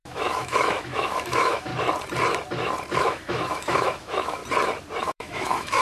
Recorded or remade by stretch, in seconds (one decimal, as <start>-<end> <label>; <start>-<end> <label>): 0.0-1.7 remade; 1.7-3.0 recorded; 3.0-4.4 remade; 4.4-5.0 recorded; 5.0-5.8 remade